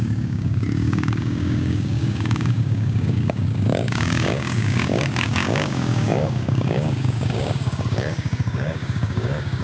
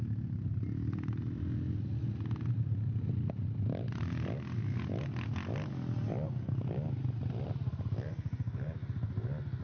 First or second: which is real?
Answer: second